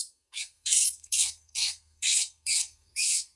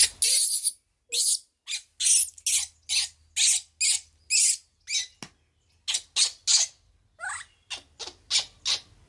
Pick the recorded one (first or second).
second